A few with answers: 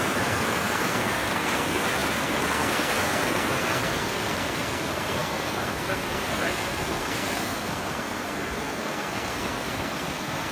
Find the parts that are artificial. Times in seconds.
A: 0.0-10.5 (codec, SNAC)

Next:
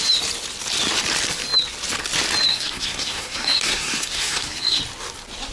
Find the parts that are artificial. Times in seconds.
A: 2.5-4.8 (codec, SNAC)